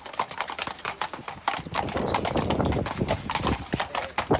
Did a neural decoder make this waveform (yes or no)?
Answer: no